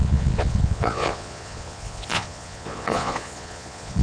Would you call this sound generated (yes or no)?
yes